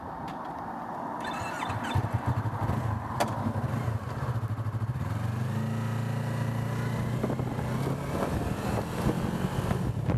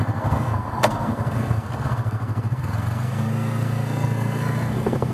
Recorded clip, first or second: first